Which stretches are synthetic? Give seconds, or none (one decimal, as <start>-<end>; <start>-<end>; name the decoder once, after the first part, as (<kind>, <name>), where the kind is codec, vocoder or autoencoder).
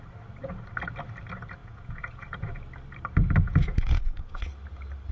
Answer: 1.6-2.6 (vocoder, Vocos); 3.6-4.4